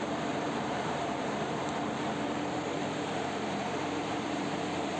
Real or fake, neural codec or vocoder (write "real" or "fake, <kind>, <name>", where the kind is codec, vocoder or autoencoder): fake, vocoder, BigVGAN v2